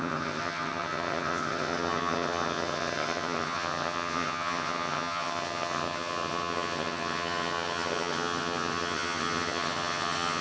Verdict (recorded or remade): remade